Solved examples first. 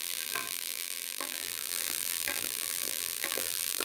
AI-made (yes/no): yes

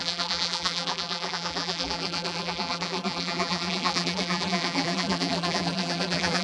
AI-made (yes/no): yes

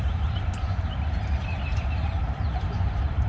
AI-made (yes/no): yes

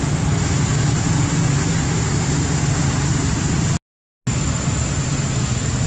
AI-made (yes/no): no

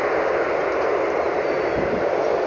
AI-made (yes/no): no